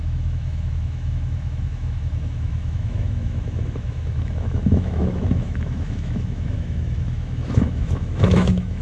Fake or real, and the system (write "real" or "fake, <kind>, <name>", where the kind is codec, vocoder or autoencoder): fake, autoencoder, DAC-VAE